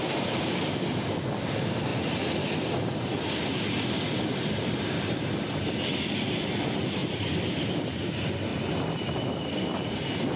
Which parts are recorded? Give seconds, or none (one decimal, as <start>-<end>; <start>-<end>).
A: 1.9-3.6; 7.0-7.5; 8.5-9.6